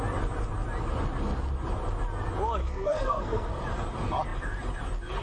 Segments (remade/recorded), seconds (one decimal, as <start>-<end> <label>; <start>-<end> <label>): 0.0-2.6 recorded; 2.6-3.6 remade; 3.6-5.2 recorded

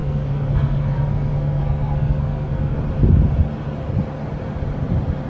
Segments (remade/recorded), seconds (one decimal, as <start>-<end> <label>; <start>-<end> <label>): 0.0-2.8 remade; 2.8-5.3 recorded

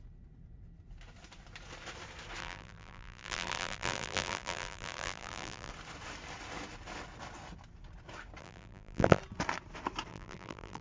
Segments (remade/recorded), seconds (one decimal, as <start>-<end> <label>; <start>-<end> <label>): 0.0-2.4 recorded; 2.4-5.7 remade; 5.7-8.4 recorded; 8.4-9.2 remade; 9.2-10.1 recorded; 10.1-10.8 remade

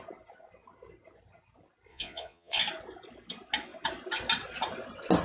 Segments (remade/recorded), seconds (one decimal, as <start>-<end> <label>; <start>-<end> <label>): 0.0-1.9 recorded; 1.9-2.6 remade; 2.6-5.2 recorded

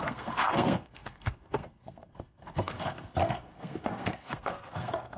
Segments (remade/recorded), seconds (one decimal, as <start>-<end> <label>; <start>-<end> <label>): 0.0-5.2 remade